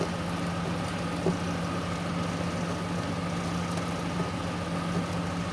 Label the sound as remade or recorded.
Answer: recorded